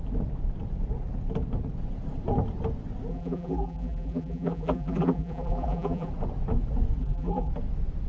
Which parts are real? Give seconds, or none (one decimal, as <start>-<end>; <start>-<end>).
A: 0.0-3.1; 6.1-7.0; 7.5-8.1